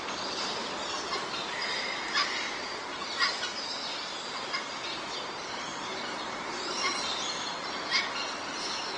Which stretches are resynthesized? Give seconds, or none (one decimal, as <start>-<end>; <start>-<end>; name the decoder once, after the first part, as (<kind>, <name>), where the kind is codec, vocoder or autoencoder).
0.6-2.8 (vocoder, BigVGAN v2); 3.8-5.4; 6.5-7.9